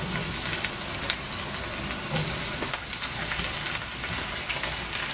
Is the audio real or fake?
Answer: real